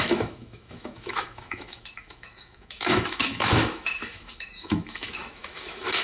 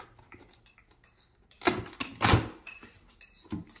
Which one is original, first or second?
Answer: second